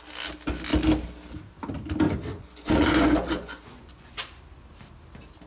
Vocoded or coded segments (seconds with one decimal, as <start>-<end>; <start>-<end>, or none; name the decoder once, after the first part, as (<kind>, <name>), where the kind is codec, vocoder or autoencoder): 2.3-4.1 (vocoder, Vocos)